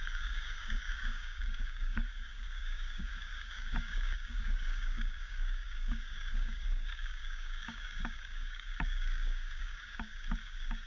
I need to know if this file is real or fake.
fake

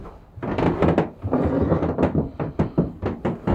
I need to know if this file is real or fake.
real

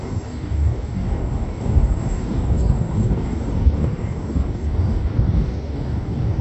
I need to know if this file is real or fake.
fake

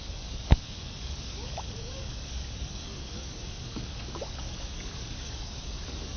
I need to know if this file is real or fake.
fake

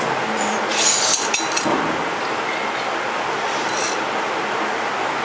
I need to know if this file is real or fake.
real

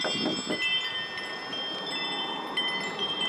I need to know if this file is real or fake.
real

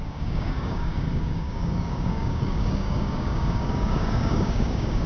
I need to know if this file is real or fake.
fake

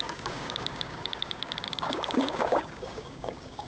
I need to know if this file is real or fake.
fake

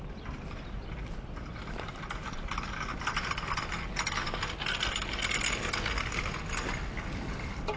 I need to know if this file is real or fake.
real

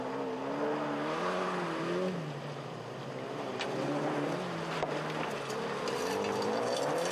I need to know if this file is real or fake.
real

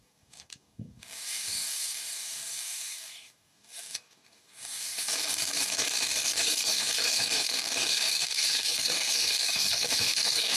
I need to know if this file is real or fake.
fake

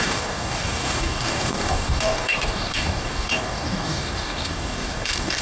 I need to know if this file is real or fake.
fake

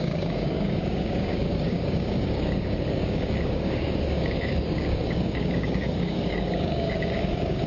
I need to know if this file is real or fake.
fake